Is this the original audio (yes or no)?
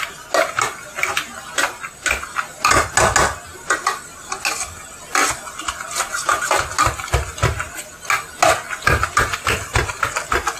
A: yes